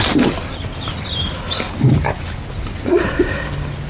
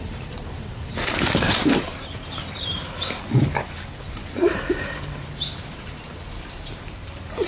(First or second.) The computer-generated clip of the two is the second